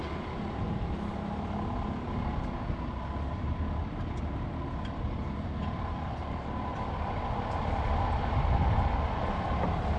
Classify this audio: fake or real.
real